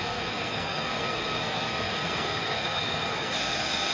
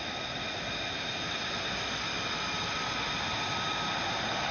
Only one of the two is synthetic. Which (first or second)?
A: first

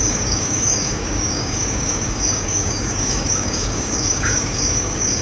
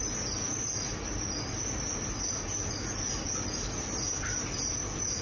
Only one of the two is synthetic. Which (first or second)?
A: first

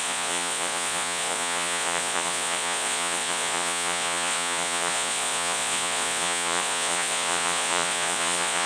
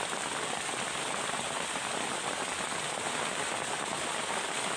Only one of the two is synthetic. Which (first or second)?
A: first